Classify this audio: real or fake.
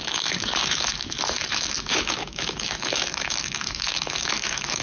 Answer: fake